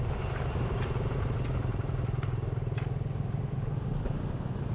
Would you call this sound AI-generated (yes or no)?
no